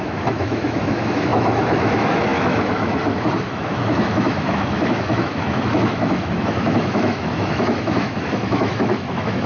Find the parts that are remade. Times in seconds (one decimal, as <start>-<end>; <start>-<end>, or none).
0.0-9.5